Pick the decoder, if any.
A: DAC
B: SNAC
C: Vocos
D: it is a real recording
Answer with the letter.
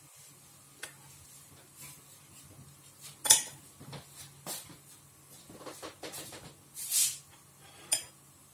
D